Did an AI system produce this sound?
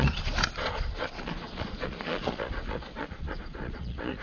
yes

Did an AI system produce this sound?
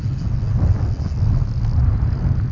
no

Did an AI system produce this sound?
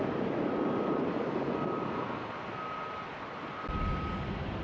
no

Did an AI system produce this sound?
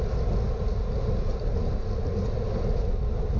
no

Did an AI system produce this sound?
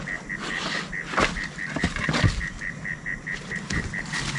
no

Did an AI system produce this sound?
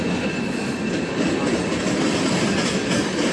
no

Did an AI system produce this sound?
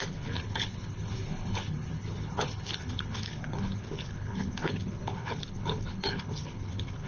yes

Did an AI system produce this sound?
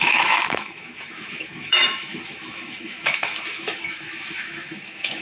yes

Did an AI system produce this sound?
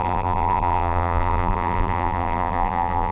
yes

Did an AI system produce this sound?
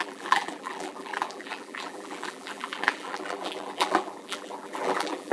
yes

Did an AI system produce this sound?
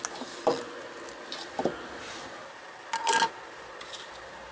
no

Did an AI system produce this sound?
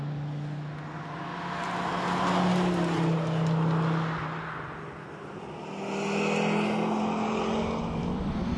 no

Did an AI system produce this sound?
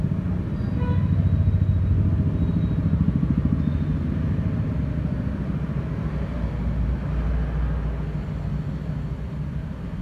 no